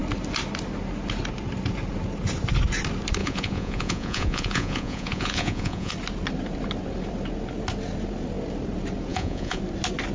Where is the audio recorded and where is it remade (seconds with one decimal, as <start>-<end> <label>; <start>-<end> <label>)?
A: 0.0-3.2 recorded; 3.2-5.9 remade; 5.9-9.1 recorded; 9.1-9.6 remade; 9.6-10.1 recorded